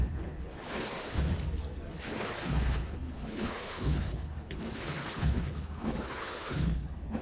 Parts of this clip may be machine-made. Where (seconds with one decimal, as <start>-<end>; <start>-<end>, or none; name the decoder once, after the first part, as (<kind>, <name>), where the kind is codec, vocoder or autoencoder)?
0.0-1.3 (codec, HILCodec); 2.0-7.2